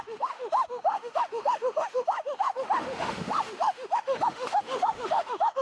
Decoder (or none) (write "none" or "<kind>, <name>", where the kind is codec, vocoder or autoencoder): autoencoder, DAC-VAE